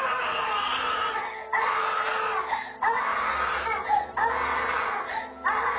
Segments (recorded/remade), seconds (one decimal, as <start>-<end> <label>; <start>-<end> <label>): 0.0-5.8 recorded